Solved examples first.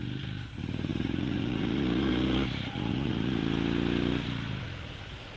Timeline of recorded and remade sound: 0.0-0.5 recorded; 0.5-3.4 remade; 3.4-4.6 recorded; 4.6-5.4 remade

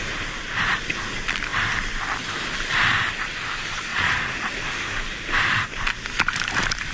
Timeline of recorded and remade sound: 0.0-3.9 recorded; 3.9-4.5 remade; 4.5-6.9 recorded

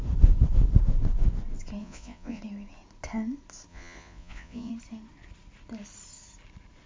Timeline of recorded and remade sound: 0.0-1.8 recorded; 1.8-2.4 remade; 2.4-3.7 recorded; 3.7-4.7 remade; 4.7-6.9 recorded